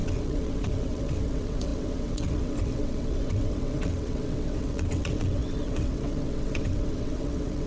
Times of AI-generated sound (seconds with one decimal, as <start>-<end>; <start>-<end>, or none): 0.0-7.7